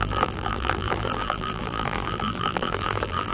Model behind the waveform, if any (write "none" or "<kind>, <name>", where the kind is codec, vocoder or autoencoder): vocoder, BigVGAN v2